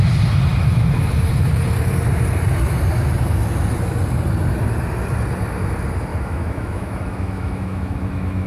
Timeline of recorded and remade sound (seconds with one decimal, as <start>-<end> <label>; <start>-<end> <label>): 0.0-6.1 recorded; 6.1-8.5 remade